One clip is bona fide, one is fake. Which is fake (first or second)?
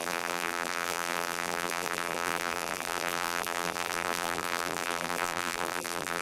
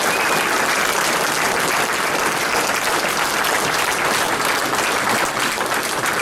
first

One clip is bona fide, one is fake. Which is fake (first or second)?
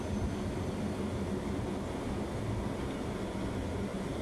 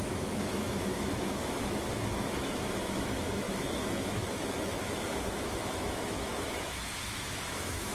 second